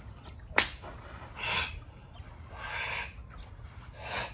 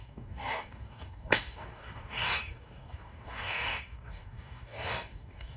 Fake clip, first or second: second